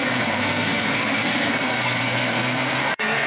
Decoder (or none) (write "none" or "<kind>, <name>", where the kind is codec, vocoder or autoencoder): codec, SNAC